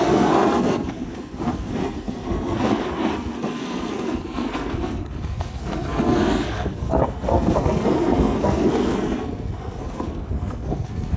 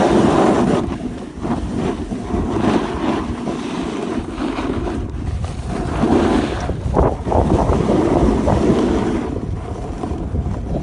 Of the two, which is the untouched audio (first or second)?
second